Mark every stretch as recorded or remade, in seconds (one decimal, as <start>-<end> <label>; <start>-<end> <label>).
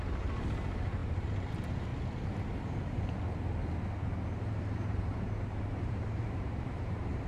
0.0-1.9 remade; 1.9-4.4 recorded; 4.4-7.3 remade